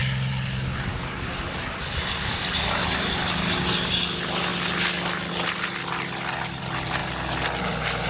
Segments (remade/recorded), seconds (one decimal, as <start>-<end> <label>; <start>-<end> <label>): 0.0-2.7 remade; 2.7-8.1 recorded